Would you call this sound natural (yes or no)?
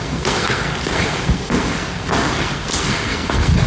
no